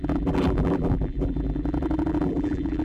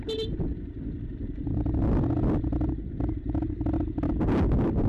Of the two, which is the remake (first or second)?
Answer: first